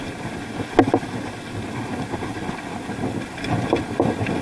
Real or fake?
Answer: real